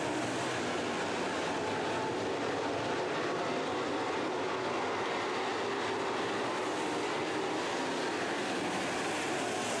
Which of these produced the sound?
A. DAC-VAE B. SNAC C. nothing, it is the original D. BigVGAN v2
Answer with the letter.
C